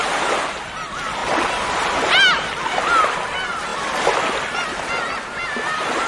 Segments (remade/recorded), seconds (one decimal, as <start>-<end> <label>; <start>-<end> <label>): 0.0-1.2 recorded; 1.2-2.8 remade; 2.8-6.1 recorded